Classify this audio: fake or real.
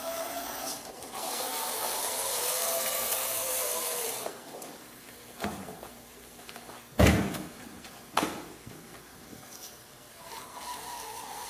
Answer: fake